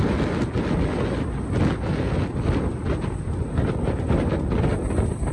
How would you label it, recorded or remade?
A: recorded